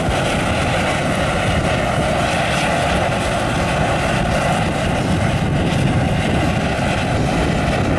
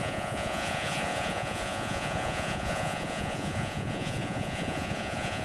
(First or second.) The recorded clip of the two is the first